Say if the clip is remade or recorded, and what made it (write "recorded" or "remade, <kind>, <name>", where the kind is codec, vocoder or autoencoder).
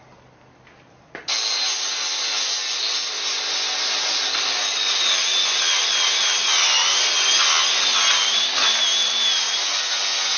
recorded